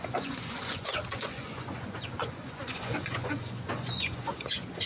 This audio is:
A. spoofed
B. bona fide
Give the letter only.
A